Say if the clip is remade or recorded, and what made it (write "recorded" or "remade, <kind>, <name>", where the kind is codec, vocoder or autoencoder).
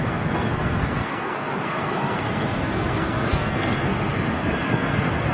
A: remade, codec, SNAC